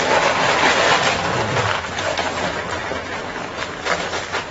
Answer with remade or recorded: recorded